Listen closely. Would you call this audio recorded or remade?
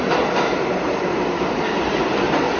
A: recorded